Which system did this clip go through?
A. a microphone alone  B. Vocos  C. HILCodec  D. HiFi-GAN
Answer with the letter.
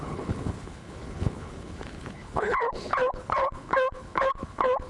C